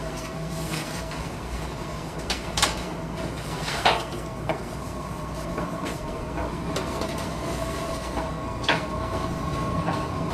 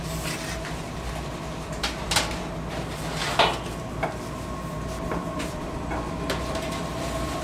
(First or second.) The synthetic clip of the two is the first